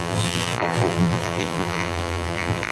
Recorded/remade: remade